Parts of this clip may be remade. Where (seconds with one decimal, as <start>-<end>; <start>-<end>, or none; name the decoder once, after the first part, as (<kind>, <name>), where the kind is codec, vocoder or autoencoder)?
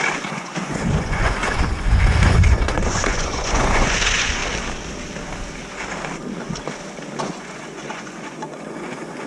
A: 0.0-4.4 (vocoder, Vocos); 7.2-9.3